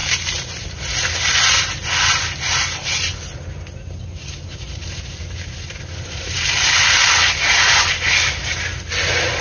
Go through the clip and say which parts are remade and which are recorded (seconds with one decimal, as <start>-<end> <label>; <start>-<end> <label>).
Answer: 0.0-9.4 recorded